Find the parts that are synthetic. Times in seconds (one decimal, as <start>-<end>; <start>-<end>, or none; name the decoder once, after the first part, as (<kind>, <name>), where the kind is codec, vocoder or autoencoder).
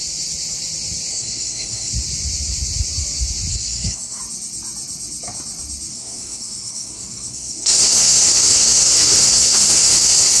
1.1-1.9 (codec, SNAC); 3.5-4.2; 5.9-10.4